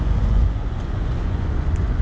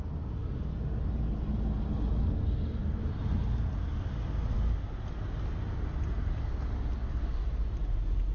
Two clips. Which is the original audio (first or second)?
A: second